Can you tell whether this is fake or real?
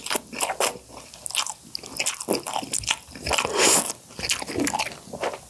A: real